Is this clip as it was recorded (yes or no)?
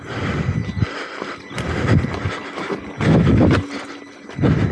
yes